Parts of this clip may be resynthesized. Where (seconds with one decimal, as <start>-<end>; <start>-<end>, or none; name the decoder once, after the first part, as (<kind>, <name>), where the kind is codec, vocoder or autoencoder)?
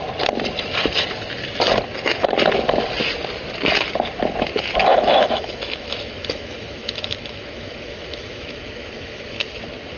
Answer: 4.9-9.6 (autoencoder, DAC-VAE)